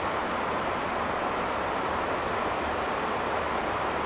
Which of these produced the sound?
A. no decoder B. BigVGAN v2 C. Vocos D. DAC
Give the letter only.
A